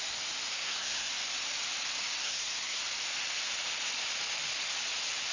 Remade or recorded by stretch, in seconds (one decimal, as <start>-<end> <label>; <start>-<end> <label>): 0.0-0.5 recorded; 0.5-1.1 remade; 1.1-2.2 recorded; 2.2-2.8 remade; 2.8-5.3 recorded